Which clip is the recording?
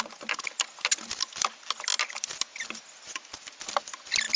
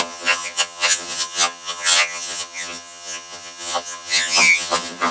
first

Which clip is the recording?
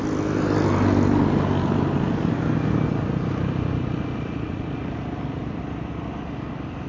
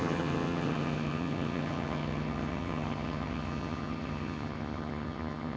first